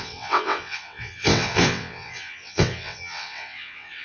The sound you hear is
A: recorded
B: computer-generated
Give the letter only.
B